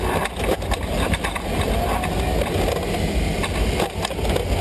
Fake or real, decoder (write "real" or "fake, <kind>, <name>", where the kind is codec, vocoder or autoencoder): real